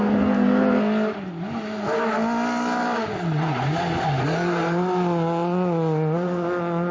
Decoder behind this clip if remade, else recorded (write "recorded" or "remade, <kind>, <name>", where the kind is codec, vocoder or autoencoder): recorded